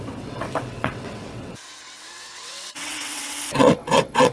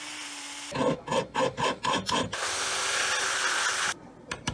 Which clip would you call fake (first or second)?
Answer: first